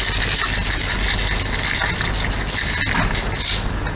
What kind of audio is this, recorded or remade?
recorded